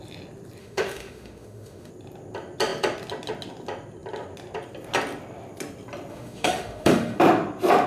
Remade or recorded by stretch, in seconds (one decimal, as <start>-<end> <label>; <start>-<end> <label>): 0.0-0.6 recorded; 0.6-1.9 remade; 1.9-6.1 recorded; 6.1-7.2 remade; 7.2-7.9 recorded